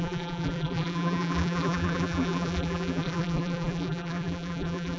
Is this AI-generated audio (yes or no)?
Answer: yes